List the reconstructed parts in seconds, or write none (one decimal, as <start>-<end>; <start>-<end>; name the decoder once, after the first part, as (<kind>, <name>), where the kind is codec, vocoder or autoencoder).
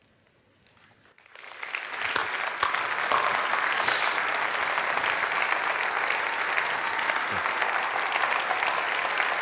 none